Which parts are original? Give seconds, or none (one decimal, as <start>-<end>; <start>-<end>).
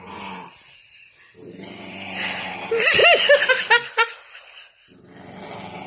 0.0-5.9